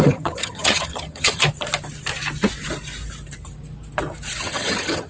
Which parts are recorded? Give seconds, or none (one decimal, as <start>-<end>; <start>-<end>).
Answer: 1.4-4.4